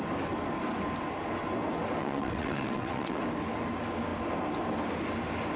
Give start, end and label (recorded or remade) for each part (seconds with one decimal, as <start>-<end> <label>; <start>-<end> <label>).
0.0-2.0 recorded; 2.0-3.2 remade; 3.2-5.6 recorded